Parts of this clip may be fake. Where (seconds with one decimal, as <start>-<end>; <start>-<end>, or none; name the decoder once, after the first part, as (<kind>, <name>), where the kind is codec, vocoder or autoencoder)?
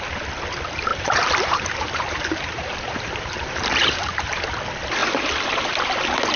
0.9-4.4 (vocoder, BigVGAN v2)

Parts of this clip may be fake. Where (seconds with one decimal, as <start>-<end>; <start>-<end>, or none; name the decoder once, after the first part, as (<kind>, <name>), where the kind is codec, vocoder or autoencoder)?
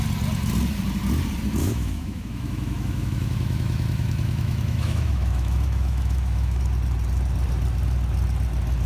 1.6-6.6 (autoencoder, DAC-VAE)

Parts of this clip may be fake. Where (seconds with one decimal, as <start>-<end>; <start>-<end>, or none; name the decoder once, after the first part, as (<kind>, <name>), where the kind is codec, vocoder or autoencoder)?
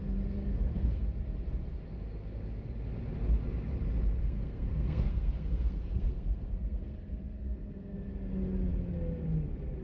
0.5-1.0 (codec, SNAC); 4.2-8.1